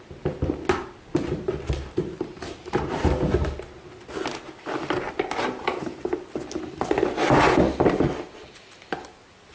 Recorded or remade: recorded